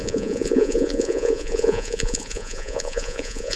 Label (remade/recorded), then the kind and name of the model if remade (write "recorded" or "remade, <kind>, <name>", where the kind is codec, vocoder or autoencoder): remade, vocoder, Vocos